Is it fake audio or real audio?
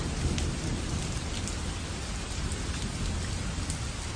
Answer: real